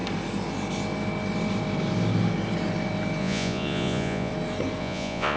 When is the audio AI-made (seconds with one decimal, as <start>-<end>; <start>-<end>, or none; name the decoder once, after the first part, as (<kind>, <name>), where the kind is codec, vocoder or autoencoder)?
3.2-4.3 (vocoder, Vocos); 4.8-5.4